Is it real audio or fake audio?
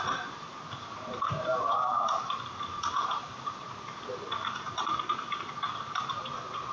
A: fake